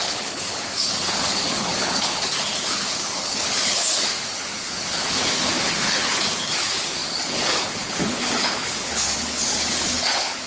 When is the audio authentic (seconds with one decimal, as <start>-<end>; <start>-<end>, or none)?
none